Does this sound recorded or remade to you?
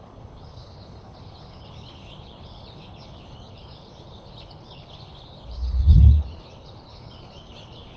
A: remade